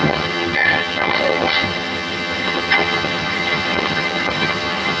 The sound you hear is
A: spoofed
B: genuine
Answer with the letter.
A